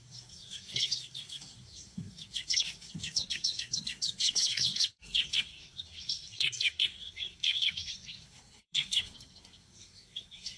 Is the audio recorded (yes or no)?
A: no